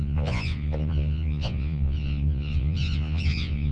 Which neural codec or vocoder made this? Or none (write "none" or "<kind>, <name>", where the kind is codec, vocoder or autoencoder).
vocoder, Vocos